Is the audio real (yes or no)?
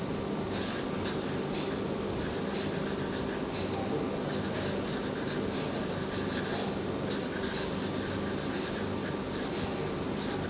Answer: yes